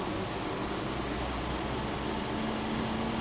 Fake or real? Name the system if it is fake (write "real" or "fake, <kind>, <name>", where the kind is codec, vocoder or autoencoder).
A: real